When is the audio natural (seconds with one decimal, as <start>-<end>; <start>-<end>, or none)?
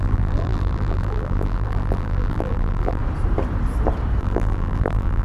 3.0-4.2